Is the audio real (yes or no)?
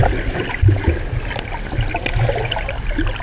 yes